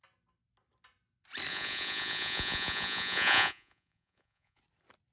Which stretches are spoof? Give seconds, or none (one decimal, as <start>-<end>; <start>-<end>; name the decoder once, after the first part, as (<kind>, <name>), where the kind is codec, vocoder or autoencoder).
1.5-4.6 (vocoder, Vocos)